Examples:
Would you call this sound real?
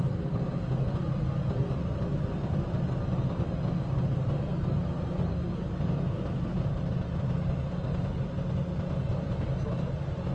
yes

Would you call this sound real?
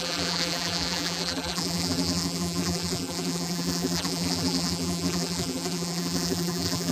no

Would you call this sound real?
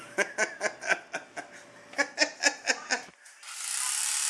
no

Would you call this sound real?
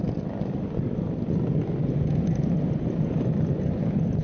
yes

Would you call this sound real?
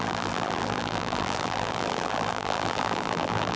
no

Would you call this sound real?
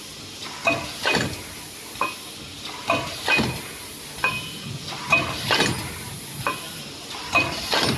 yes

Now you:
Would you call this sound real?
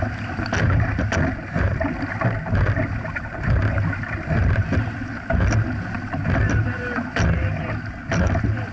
yes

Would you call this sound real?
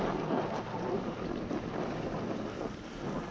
yes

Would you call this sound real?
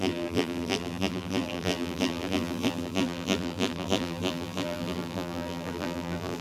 no